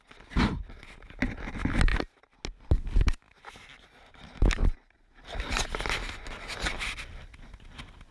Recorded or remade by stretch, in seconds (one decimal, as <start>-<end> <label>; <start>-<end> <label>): 0.0-8.1 recorded